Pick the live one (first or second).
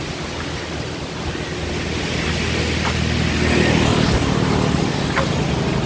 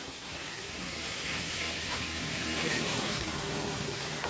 first